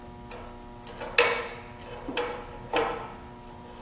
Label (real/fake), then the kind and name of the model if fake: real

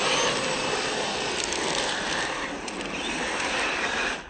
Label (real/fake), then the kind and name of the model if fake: real